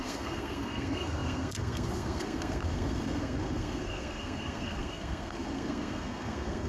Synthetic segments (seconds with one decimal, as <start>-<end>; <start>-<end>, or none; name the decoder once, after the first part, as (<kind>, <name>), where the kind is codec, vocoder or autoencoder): 0.0-6.7 (codec, SNAC)